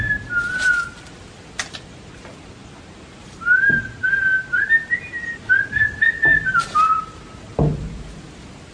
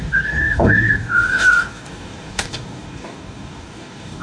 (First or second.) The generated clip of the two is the second